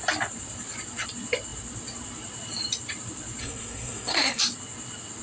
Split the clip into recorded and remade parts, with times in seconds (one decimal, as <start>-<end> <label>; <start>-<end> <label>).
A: 0.0-3.4 recorded; 3.4-4.4 remade; 4.4-5.2 recorded